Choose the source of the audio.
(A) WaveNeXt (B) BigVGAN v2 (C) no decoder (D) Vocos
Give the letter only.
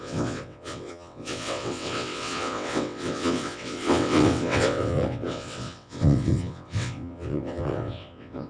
A